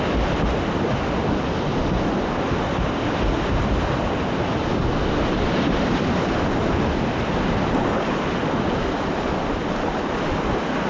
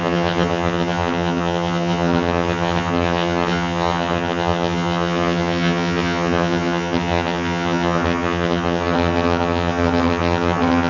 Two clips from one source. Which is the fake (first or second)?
second